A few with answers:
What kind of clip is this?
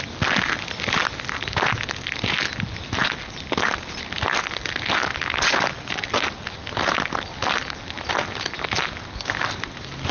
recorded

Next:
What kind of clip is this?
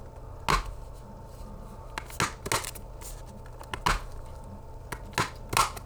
recorded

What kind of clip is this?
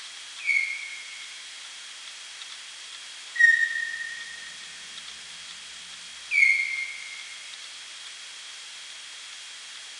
recorded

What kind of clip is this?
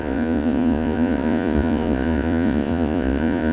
remade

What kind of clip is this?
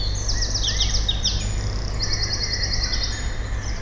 recorded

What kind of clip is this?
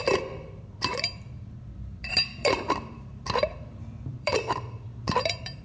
remade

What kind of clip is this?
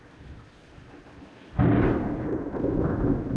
recorded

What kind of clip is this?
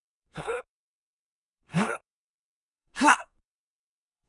remade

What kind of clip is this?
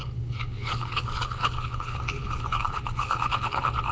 remade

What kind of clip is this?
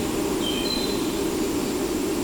recorded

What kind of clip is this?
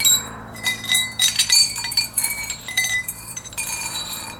remade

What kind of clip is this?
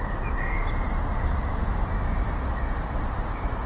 recorded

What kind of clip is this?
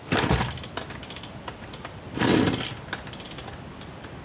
recorded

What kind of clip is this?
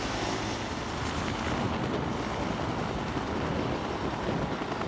recorded